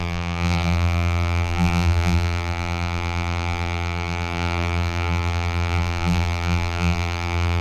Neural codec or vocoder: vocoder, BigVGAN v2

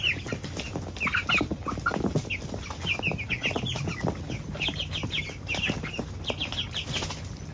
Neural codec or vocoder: none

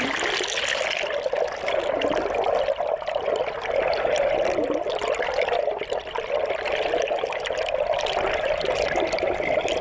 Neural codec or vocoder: none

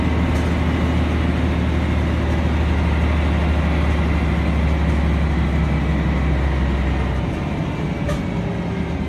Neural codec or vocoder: none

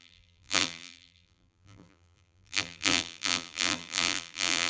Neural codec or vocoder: vocoder, BigVGAN v2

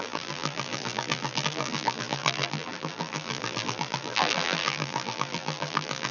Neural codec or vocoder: vocoder, BigVGAN v2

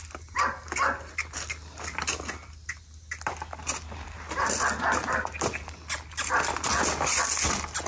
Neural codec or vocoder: none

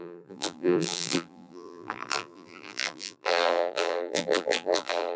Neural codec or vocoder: vocoder, BigVGAN v2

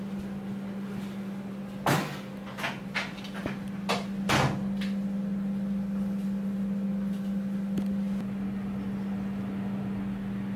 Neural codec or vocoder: none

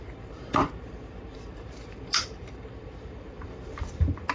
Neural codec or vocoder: vocoder, BigVGAN v2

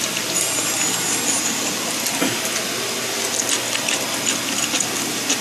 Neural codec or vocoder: none